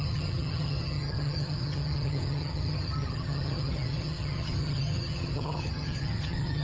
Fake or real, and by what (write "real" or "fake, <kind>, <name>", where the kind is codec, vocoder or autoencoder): fake, vocoder, HiFi-GAN